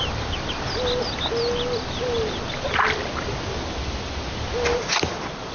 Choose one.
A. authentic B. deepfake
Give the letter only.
A